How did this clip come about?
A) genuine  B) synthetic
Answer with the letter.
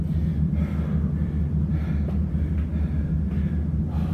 A